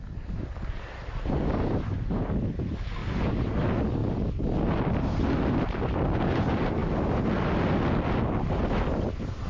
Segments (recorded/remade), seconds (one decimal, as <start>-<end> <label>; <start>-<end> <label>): 0.0-9.5 recorded